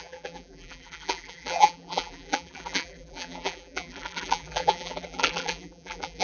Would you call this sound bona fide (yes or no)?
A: no